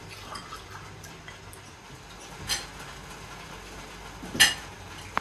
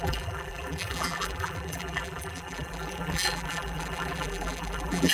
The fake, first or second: second